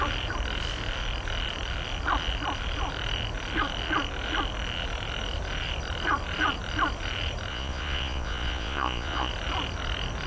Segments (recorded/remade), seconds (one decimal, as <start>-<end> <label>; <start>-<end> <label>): 0.0-7.5 recorded; 7.5-9.3 remade; 9.3-10.3 recorded